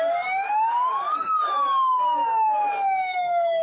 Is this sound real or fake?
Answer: fake